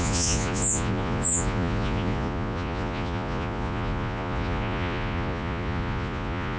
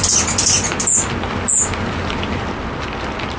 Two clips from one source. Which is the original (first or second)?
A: second